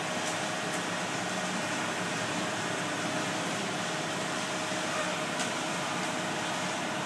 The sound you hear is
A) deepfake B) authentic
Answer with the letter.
A